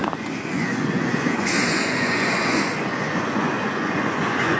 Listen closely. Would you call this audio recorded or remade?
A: remade